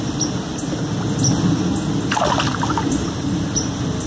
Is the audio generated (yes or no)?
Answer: no